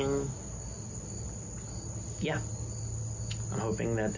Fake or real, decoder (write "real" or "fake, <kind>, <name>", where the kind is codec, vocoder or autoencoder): real